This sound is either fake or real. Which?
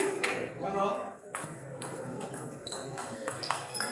fake